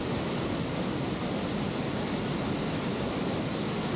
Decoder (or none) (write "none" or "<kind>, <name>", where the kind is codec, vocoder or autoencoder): none